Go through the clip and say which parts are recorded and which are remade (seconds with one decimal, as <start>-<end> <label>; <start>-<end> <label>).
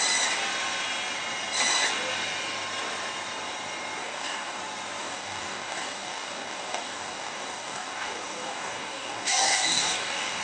0.0-4.0 recorded; 4.0-4.6 remade; 4.6-5.0 recorded; 5.0-10.4 remade